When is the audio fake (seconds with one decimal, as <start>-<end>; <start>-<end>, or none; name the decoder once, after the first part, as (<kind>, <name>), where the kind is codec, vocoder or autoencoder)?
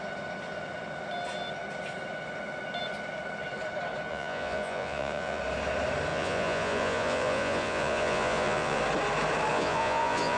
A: 4.1-5.4 (vocoder, Vocos); 6.1-8.8; 9.5-10.4